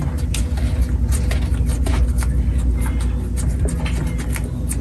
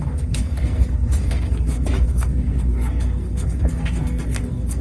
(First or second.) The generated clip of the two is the second